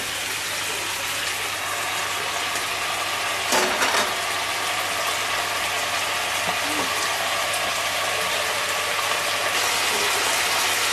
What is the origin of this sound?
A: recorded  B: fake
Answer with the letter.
A